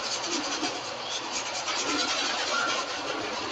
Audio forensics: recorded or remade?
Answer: remade